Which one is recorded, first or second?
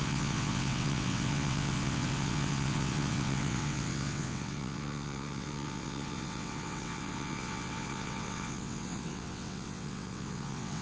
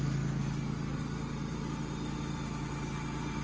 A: second